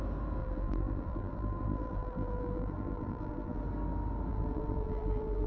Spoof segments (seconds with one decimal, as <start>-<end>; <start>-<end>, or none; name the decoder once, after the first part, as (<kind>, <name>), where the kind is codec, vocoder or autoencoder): 0.4-3.6 (vocoder, BigVGAN v2); 4.3-5.5